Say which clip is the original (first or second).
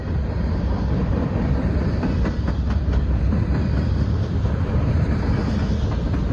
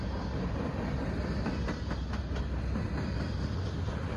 second